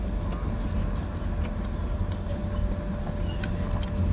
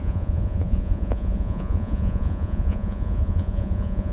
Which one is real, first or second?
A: first